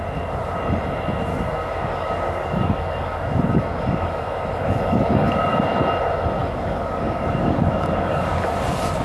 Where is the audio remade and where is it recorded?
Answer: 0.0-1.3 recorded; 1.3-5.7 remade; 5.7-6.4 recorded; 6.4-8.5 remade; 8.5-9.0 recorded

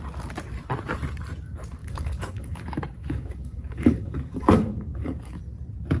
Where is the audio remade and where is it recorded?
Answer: 0.0-1.8 recorded; 1.8-2.6 remade; 2.6-3.0 recorded; 3.0-5.4 remade; 5.4-6.0 recorded

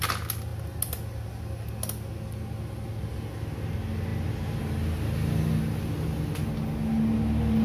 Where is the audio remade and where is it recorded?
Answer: 0.0-7.6 recorded